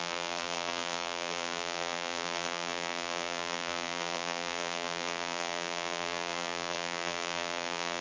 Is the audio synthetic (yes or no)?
yes